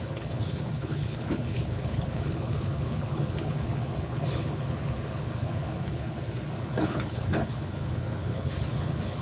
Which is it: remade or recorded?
remade